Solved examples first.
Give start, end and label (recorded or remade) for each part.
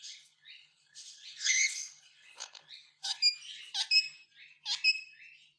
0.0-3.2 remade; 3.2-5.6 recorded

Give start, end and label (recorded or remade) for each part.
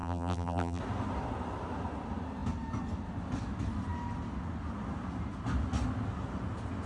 0.0-0.8 remade; 0.8-6.9 recorded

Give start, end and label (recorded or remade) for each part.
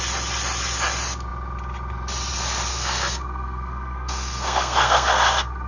0.0-2.7 recorded; 2.7-5.7 remade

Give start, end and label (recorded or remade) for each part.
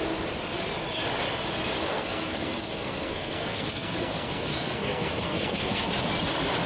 0.0-1.9 recorded; 1.9-5.9 remade; 5.9-6.7 recorded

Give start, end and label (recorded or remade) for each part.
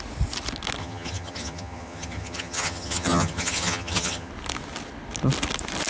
0.0-0.8 recorded; 0.8-4.3 remade; 4.3-5.9 recorded